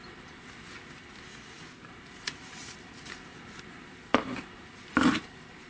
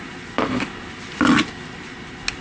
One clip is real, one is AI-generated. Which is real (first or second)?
second